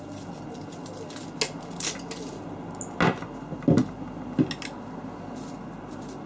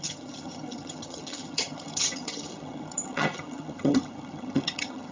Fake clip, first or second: second